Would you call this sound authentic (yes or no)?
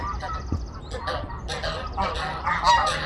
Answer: yes